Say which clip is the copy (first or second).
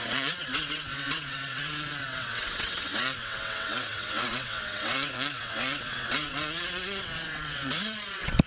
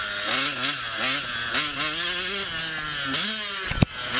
first